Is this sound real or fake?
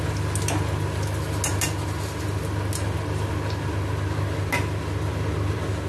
real